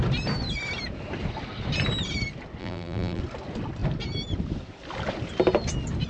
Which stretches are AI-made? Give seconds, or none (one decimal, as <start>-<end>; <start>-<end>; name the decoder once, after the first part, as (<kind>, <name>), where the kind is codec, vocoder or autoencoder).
2.6-3.2 (vocoder, BigVGAN v2)